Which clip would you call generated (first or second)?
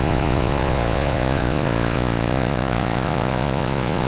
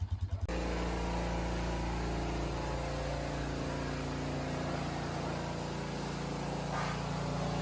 first